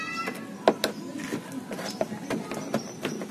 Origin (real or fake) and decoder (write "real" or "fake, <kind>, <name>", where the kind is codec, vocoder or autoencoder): real